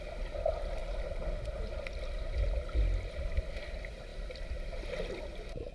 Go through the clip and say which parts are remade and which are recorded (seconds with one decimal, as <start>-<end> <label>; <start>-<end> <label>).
0.0-5.7 recorded